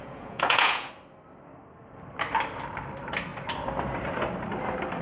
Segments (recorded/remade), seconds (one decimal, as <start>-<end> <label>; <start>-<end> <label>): 0.0-0.9 remade; 0.9-5.0 recorded